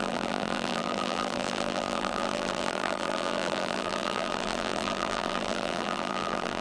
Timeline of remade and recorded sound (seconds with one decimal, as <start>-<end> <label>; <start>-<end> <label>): 0.0-6.6 remade